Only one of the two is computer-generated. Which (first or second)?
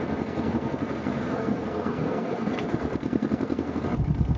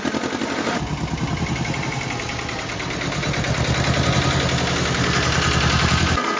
first